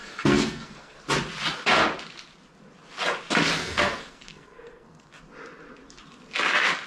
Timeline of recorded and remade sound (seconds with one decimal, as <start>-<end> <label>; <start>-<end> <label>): 0.0-1.0 remade; 1.0-3.6 recorded; 3.6-5.2 remade; 5.2-6.9 recorded